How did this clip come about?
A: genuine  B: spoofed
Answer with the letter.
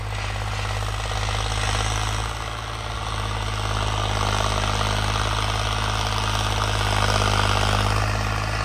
A